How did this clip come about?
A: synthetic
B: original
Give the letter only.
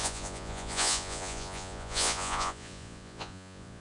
A